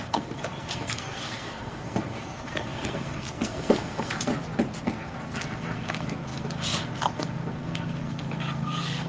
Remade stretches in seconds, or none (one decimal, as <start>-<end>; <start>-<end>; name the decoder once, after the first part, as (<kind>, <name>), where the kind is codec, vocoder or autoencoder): 0.0-4.3 (codec, SNAC); 4.8-9.1